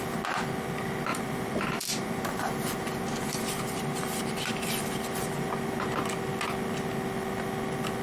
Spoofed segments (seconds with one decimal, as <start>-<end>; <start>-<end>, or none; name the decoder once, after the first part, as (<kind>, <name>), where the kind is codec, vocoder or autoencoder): 1.1-5.9 (vocoder, BigVGAN v2)